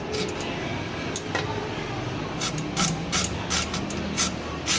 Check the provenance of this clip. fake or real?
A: real